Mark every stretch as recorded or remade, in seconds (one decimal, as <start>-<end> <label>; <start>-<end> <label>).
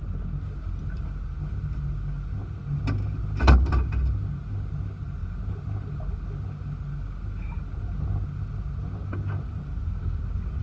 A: 0.0-10.6 recorded